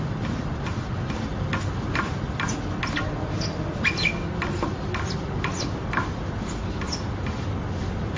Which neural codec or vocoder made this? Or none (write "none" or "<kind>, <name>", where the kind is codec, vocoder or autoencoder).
none